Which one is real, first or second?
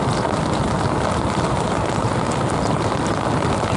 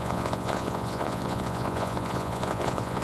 first